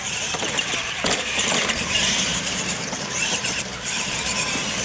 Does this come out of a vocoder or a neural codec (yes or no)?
yes